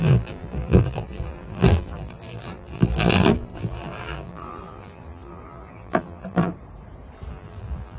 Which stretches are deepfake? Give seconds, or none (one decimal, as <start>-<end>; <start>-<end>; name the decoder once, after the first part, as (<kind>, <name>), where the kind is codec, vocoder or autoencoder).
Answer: 0.0-6.5 (vocoder, BigVGAN v2); 7.3-8.0